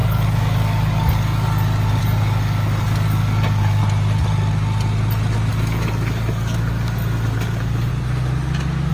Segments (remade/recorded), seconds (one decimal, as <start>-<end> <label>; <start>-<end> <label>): 0.0-3.8 remade; 3.8-5.5 recorded; 5.5-7.9 remade; 7.9-8.9 recorded